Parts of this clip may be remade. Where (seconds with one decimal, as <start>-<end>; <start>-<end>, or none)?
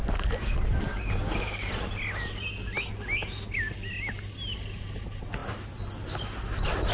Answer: 0.9-1.7